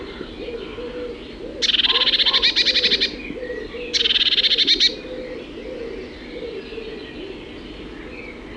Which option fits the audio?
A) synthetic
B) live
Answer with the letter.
B